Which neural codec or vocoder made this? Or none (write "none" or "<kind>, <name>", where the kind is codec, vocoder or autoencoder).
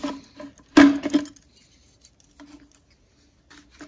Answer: none